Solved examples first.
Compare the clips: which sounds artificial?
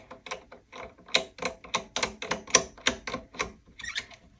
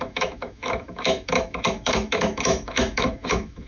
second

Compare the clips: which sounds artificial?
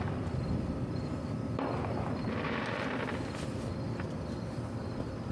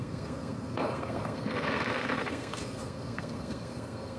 second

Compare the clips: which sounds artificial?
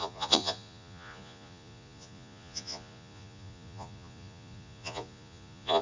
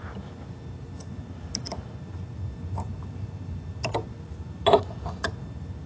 first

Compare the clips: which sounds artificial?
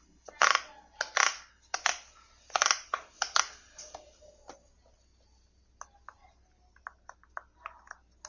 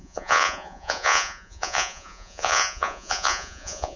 second